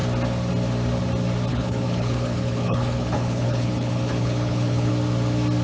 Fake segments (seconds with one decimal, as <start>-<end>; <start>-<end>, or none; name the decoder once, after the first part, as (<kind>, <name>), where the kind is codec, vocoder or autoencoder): 1.5-4.9 (codec, HILCodec)

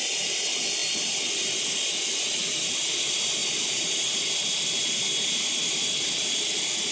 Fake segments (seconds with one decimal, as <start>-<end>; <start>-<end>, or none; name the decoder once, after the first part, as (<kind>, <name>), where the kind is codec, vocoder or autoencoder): 0.0-0.8 (vocoder, BigVGAN v2); 1.6-3.4; 4.2-4.8; 5.5-6.9

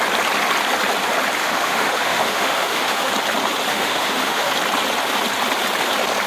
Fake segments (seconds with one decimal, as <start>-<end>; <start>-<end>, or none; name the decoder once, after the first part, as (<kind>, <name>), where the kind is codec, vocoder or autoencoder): 1.4-3.1 (autoencoder, DAC-VAE); 3.7-4.5

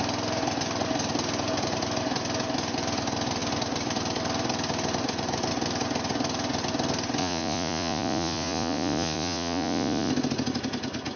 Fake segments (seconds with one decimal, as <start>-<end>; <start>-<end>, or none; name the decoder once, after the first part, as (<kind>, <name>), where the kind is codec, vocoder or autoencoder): 7.2-10.1 (vocoder, Vocos)

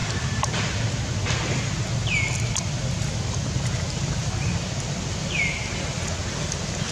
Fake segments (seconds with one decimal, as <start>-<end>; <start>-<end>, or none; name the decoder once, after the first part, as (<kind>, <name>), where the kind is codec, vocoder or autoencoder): 0.0-0.7 (vocoder, BigVGAN v2); 4.2-5.5

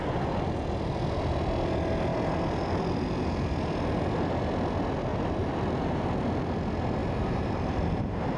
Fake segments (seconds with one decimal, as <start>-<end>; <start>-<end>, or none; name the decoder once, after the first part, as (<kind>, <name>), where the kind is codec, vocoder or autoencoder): 5.1-6.2 (vocoder, BigVGAN v2); 7.0-8.4

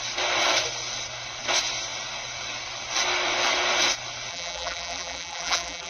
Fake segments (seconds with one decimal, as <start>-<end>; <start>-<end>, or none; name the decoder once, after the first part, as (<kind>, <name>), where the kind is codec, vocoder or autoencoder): 4.3-5.9 (vocoder, BigVGAN v2)

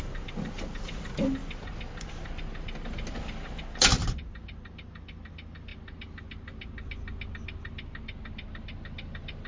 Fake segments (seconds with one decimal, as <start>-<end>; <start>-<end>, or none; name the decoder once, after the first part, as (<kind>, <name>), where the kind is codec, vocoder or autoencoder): none